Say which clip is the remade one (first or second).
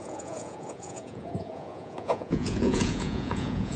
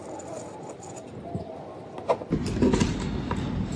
first